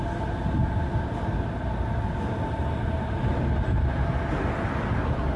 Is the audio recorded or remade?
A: recorded